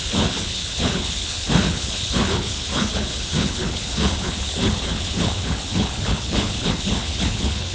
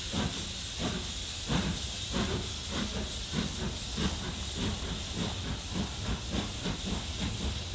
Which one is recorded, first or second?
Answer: second